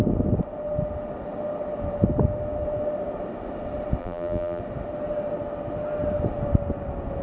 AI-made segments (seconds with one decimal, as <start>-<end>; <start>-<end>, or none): 4.0-4.6